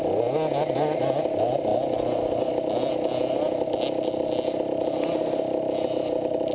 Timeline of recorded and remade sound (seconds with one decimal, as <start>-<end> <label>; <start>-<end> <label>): 0.0-6.5 recorded